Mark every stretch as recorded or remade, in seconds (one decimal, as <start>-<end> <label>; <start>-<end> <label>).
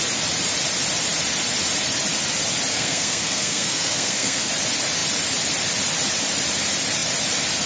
0.0-2.7 recorded; 2.7-4.5 remade; 4.5-7.7 recorded